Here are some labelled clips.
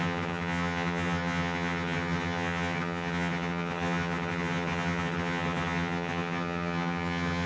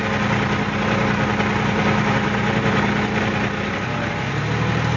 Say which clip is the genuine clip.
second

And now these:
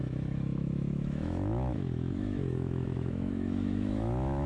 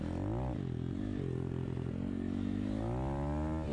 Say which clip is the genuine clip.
second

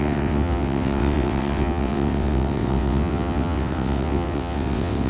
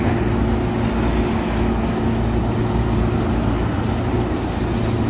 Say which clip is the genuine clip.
second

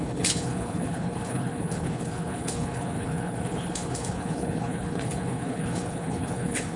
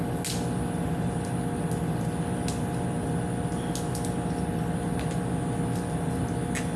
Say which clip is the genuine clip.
second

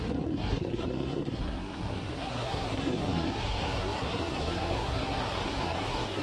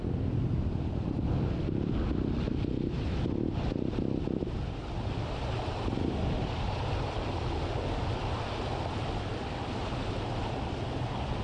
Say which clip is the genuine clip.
second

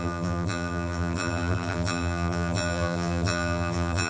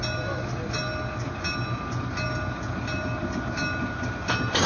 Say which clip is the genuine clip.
second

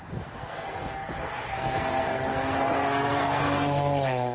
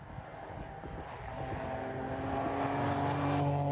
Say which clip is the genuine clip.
second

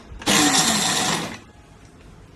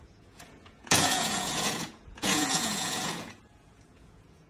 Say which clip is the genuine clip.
first